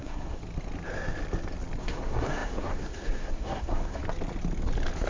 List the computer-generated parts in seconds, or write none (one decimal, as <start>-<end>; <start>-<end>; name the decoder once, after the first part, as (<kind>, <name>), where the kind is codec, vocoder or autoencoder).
0.0-0.4 (codec, SNAC); 1.8-4.0